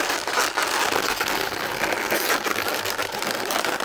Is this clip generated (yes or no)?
no